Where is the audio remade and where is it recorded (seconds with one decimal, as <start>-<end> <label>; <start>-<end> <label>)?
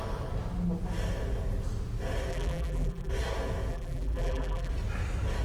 0.0-2.3 recorded; 2.3-3.1 remade; 3.1-3.7 recorded; 3.7-4.7 remade; 4.7-5.4 recorded